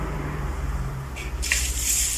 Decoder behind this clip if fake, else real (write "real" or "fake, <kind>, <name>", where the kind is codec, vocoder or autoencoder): fake, vocoder, BigVGAN v2